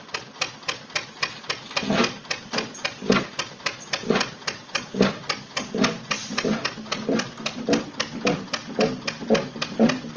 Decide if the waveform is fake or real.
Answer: real